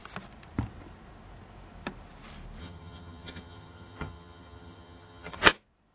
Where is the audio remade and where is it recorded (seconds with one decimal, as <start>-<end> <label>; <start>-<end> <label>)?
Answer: 0.0-2.6 recorded; 2.6-5.4 remade; 5.4-5.9 recorded

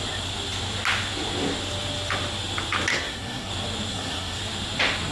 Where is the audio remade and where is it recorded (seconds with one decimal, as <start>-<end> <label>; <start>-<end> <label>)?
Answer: 0.0-2.9 recorded; 2.9-3.5 remade; 3.5-3.9 recorded; 3.9-4.4 remade; 4.4-5.1 recorded

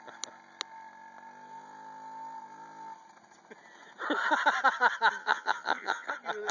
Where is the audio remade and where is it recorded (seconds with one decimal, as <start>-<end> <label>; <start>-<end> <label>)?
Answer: 0.0-5.2 recorded; 5.2-6.1 remade; 6.1-6.5 recorded